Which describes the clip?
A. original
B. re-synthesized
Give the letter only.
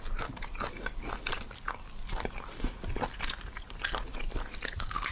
A